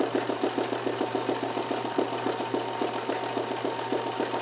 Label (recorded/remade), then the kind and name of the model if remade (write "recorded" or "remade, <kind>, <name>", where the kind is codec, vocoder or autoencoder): recorded